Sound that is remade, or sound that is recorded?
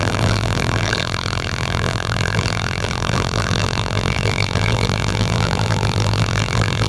remade